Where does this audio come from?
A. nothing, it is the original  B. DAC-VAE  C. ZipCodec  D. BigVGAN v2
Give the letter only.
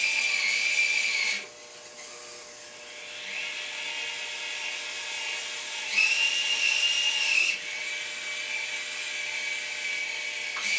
A